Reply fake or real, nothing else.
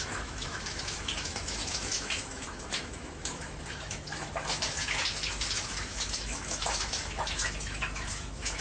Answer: fake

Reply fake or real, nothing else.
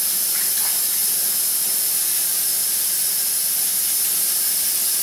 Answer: real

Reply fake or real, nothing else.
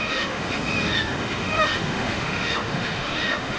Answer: fake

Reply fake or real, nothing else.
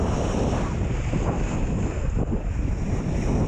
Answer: real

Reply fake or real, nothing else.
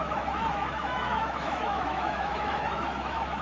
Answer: fake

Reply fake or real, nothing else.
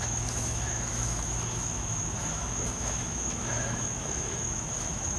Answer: fake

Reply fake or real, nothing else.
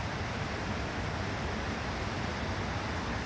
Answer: real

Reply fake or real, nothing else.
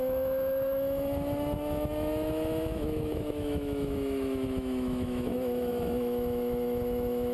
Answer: fake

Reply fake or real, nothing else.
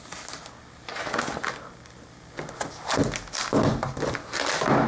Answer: real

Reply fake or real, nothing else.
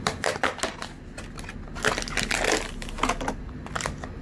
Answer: real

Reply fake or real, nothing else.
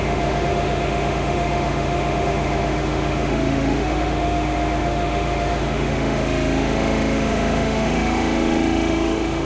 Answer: fake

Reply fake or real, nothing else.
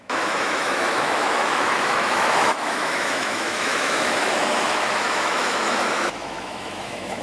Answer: fake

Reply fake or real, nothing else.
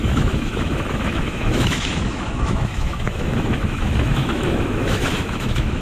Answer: fake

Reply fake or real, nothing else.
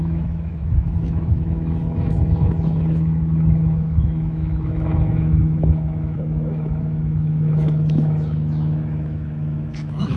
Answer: fake